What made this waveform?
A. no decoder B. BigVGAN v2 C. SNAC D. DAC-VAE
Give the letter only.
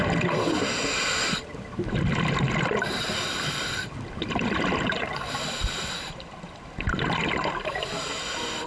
B